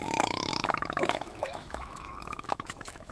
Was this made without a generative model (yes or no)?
no